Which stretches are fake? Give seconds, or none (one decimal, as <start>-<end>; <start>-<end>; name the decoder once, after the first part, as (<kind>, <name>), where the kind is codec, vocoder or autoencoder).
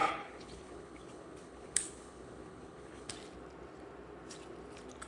0.0-3.1 (codec, HILCodec)